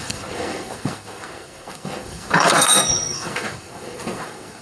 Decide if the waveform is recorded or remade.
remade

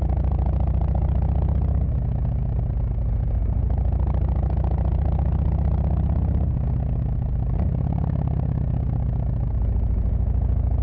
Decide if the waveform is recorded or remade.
recorded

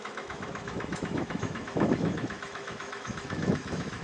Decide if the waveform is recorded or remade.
remade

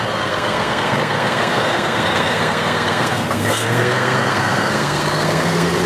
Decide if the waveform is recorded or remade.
remade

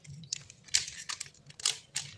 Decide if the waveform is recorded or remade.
recorded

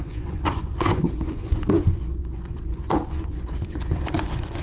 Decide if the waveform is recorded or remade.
remade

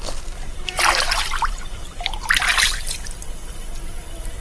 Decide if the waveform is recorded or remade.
recorded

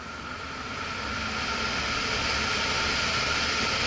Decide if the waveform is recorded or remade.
recorded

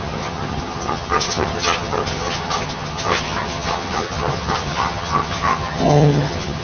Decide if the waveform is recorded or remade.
remade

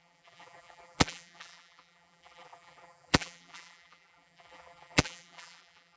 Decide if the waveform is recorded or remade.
remade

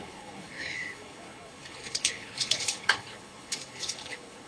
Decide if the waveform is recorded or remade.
remade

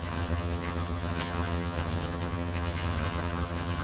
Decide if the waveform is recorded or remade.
remade